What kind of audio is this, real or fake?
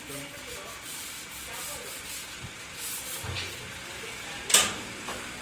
real